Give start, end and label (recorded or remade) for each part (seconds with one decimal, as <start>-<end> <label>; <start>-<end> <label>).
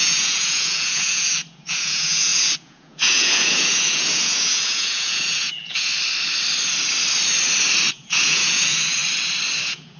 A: 0.0-5.9 remade; 5.9-7.9 recorded; 7.9-9.0 remade; 9.0-9.6 recorded; 9.6-10.0 remade